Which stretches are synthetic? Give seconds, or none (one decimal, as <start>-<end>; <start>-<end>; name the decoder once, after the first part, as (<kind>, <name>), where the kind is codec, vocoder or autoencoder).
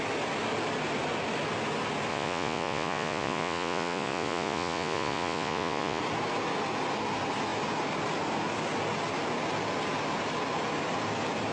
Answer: 2.1-6.0 (vocoder, Vocos)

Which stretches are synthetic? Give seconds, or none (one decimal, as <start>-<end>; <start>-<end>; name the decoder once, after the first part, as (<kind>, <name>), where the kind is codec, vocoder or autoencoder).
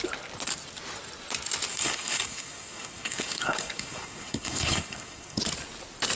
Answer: 1.7-5.4 (codec, DAC)